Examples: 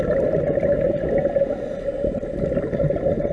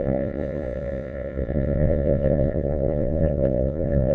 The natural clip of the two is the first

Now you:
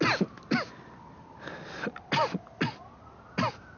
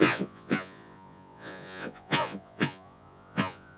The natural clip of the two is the first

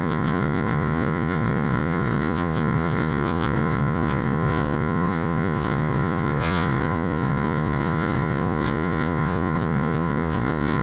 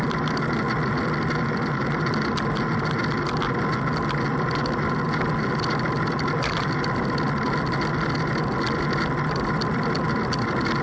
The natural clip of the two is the second